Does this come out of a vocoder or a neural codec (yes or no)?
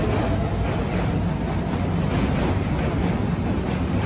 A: no